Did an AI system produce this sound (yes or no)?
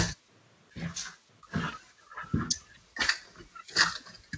no